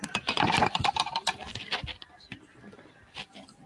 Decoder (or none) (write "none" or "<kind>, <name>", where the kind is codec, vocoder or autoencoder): vocoder, BigVGAN v2